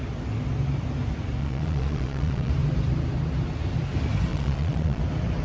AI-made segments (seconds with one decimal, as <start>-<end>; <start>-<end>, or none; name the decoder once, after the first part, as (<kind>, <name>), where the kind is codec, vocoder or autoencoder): 1.4-2.5 (vocoder, Vocos); 4.3-5.0